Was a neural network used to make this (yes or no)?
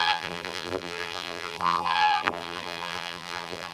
yes